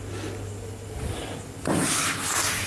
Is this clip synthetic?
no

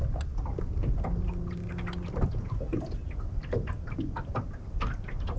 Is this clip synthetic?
no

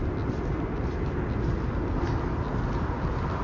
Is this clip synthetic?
no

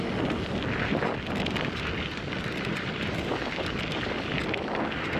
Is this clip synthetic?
no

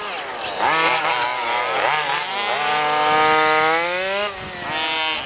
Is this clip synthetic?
no